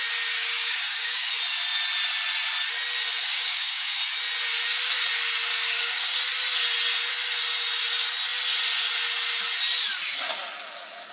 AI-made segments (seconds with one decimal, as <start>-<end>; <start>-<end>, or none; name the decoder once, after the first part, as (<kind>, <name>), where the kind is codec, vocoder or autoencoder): 0.4-1.3 (codec, DAC); 3.2-4.0; 5.5-6.2